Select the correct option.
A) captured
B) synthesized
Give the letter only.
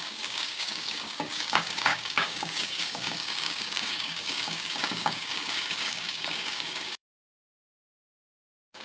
B